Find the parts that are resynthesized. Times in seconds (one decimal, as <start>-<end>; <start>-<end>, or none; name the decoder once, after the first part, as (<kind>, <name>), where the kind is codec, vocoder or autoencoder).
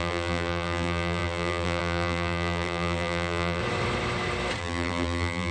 0.0-3.6 (vocoder, BigVGAN v2); 4.6-5.5